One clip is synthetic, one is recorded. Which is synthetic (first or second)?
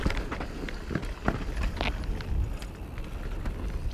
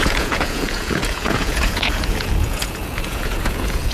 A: second